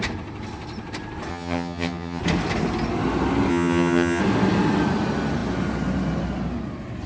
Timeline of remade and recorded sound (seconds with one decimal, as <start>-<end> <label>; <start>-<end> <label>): 0.0-1.3 recorded; 1.3-2.2 remade; 2.2-3.5 recorded; 3.5-4.2 remade; 4.2-7.1 recorded